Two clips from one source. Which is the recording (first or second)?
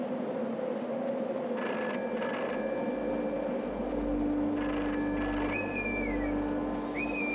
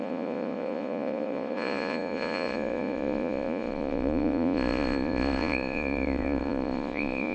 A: first